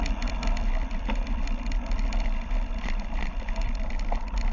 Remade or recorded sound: remade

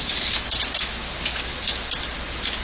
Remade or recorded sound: recorded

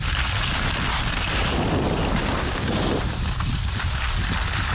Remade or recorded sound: recorded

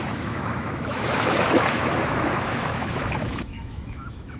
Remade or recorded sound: remade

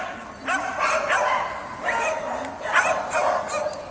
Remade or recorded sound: recorded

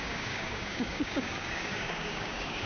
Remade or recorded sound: remade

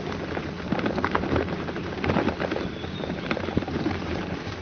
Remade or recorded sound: remade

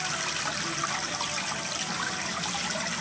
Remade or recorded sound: recorded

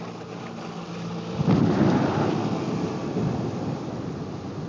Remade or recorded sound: recorded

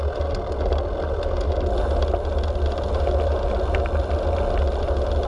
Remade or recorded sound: recorded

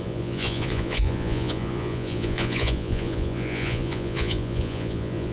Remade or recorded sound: remade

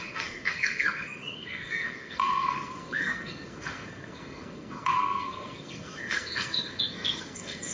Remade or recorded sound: remade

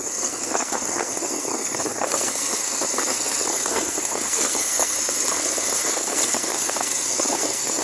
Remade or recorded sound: remade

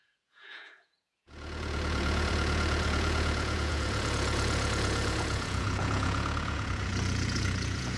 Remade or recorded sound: remade